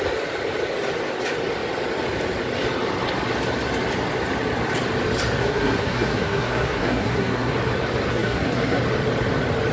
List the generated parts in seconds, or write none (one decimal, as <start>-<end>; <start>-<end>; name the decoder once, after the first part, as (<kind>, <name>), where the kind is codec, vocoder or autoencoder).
5.4-7.5 (codec, SNAC); 8.1-8.8